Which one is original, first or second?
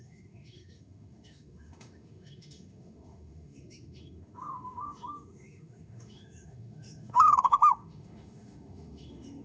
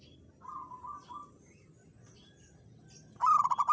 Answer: second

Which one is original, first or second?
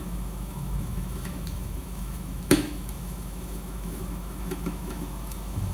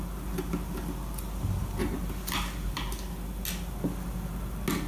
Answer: second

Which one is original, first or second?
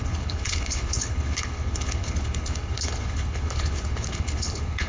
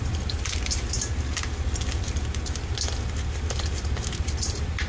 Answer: second